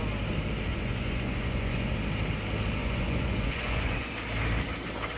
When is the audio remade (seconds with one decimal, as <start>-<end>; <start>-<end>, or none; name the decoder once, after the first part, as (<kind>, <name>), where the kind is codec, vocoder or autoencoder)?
0.7-1.9 (vocoder, Vocos); 2.8-4.1